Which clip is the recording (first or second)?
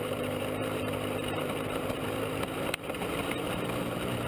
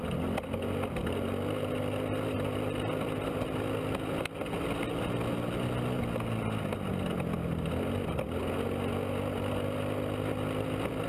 second